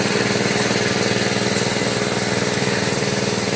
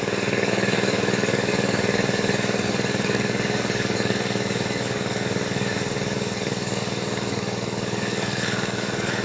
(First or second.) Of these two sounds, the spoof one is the second